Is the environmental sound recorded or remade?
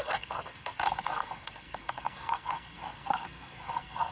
remade